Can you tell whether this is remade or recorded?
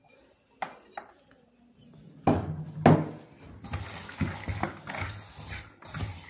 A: recorded